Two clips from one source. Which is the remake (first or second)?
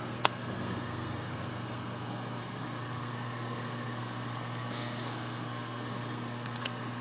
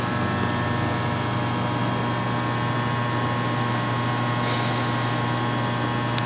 first